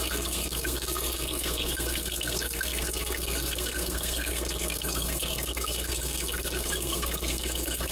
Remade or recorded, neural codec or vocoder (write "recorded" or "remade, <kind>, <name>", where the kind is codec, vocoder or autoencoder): remade, codec, SNAC